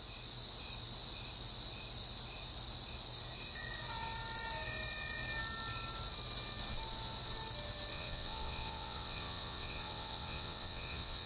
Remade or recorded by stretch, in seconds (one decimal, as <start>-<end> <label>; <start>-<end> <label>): 0.0-7.9 recorded; 7.9-11.3 remade

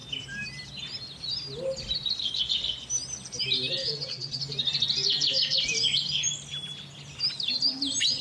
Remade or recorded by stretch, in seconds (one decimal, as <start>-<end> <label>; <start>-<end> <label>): 0.0-3.8 recorded; 3.8-4.4 remade; 4.4-8.2 recorded

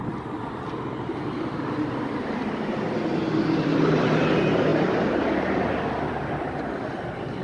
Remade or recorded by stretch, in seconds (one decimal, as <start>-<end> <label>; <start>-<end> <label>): 0.0-7.4 recorded

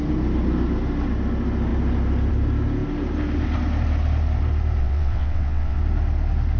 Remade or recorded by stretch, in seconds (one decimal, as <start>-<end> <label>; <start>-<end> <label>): 0.0-4.8 recorded; 4.8-5.8 remade; 5.8-6.6 recorded

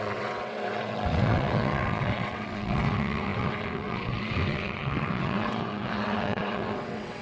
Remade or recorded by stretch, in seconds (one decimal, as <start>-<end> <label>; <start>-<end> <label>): 0.0-7.2 remade

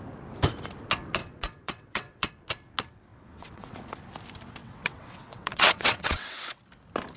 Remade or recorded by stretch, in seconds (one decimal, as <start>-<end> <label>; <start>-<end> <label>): 0.0-1.2 recorded; 1.2-2.3 remade; 2.3-3.1 recorded; 3.1-3.8 remade; 3.8-4.6 recorded; 4.6-6.6 remade; 6.6-7.2 recorded